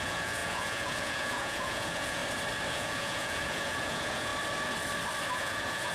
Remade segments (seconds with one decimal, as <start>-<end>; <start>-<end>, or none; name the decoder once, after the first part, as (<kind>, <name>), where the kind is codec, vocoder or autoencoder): 0.0-2.2 (vocoder, Vocos); 2.7-4.3; 5.3-5.9

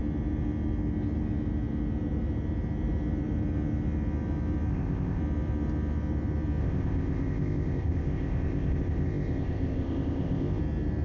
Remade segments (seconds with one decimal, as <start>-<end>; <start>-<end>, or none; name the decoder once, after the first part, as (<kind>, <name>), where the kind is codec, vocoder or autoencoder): 4.7-5.2 (codec, ZipCodec); 6.6-10.6